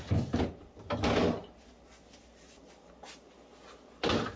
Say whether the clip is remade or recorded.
recorded